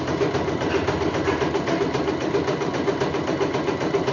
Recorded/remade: recorded